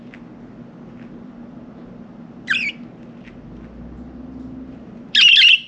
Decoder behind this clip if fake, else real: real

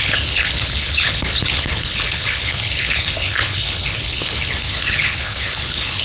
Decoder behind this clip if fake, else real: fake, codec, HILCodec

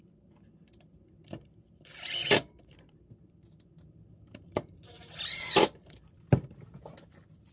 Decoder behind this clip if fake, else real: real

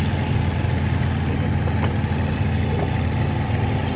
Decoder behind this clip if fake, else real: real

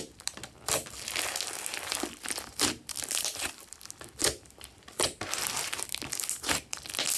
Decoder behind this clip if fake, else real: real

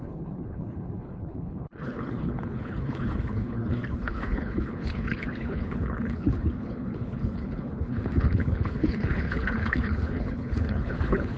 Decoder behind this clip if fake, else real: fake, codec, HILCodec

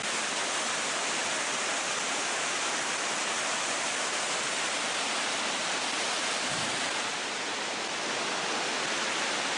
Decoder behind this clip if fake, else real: real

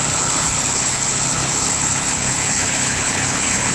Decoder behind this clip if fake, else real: fake, codec, HILCodec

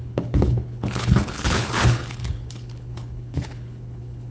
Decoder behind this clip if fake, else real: fake, codec, HILCodec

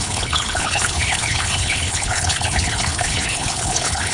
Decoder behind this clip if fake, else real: fake, codec, HILCodec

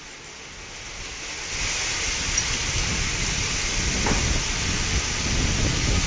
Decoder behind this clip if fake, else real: real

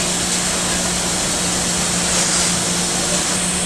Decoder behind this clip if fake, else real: real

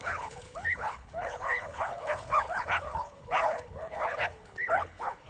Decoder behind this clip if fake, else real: fake, codec, HILCodec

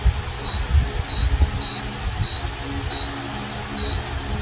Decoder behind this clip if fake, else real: real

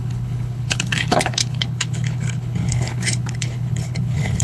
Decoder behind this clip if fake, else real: fake, codec, HILCodec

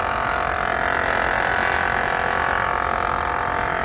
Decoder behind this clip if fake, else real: real